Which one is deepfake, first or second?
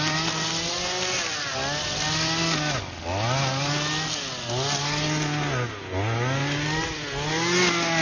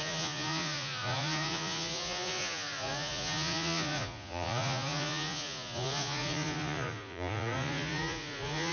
second